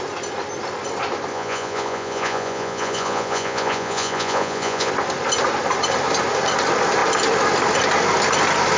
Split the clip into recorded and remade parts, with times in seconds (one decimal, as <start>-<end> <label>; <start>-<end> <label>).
0.0-1.3 recorded; 1.3-4.9 remade; 4.9-8.8 recorded